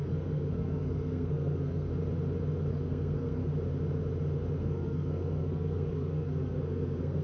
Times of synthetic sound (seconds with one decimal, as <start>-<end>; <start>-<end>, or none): 0.0-1.9; 2.7-3.4; 4.6-7.2